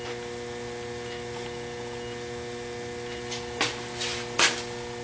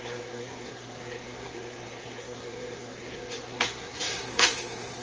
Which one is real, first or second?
first